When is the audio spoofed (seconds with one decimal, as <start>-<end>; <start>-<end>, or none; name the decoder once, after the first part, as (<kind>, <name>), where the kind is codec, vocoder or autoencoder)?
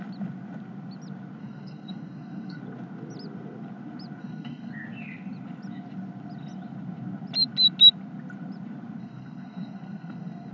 1.4-2.6 (codec, SNAC); 4.2-4.7; 9.0-10.5